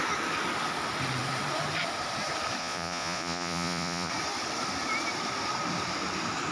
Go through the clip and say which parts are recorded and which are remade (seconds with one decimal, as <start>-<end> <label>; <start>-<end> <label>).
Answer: 0.0-2.6 recorded; 2.6-4.1 remade; 4.1-6.5 recorded